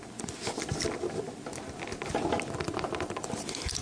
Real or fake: real